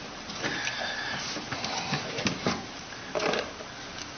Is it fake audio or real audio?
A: real